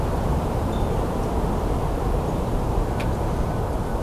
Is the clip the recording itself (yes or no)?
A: no